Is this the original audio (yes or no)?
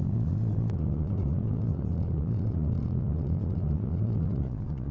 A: no